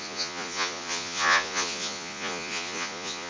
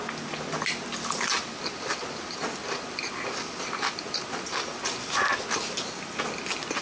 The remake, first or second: first